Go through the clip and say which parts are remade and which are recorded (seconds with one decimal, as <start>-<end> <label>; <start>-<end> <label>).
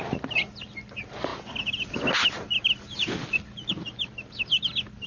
0.0-5.1 recorded